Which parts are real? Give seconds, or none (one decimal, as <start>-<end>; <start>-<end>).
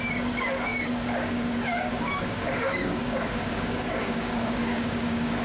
none